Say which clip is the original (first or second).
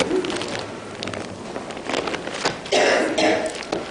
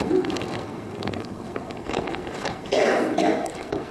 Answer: first